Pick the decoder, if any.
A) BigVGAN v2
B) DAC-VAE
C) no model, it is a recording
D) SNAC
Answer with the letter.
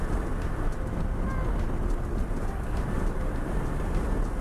C